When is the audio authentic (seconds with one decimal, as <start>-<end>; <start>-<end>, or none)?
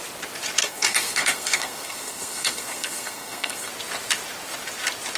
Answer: 0.0-0.6; 3.7-5.2